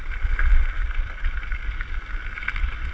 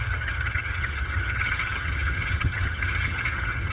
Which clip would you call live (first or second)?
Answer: first